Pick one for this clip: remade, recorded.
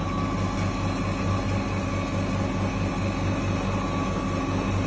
recorded